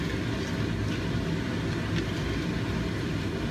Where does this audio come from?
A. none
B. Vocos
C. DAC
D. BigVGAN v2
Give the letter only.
A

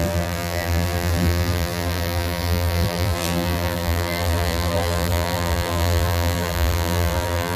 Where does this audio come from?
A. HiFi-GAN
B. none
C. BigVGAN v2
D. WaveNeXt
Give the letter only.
C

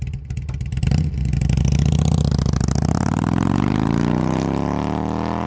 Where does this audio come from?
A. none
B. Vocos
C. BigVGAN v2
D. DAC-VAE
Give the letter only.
A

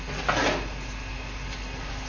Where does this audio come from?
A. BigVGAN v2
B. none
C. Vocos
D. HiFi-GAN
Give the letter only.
B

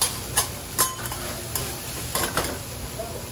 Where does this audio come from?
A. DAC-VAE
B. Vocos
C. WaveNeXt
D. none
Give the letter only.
D